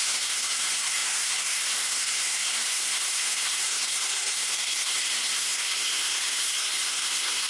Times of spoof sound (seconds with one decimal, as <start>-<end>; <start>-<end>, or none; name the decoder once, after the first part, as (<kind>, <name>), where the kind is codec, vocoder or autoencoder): 0.0-7.5 (codec, SNAC)